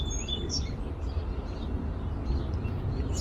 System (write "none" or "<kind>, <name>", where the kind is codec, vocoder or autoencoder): none